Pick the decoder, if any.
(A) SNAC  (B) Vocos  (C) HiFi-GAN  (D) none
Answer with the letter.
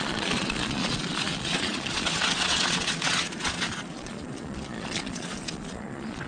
B